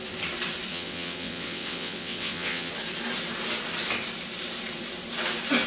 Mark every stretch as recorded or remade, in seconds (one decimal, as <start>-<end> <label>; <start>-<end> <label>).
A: 0.0-0.7 recorded; 0.7-2.7 remade; 2.7-5.7 recorded